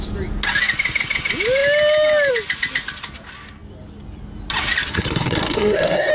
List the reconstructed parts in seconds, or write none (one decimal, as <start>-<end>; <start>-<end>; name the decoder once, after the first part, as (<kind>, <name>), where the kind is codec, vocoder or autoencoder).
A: 4.9-6.1 (codec, SNAC)